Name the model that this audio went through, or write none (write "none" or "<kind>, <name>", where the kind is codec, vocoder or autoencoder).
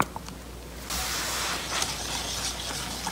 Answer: none